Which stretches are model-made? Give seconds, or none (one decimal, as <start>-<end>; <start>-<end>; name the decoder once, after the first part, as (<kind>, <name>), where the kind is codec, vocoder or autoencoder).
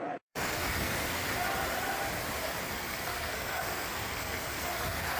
0.0-1.3 (codec, SNAC); 2.6-5.2